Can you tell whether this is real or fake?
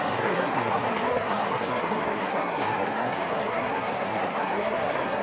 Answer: fake